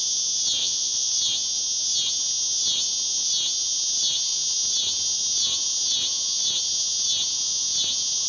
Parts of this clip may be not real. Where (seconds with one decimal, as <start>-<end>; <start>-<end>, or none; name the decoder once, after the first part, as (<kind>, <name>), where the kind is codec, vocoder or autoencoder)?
0.6-1.1 (vocoder, Vocos)